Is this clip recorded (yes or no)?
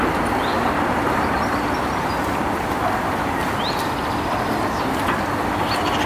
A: yes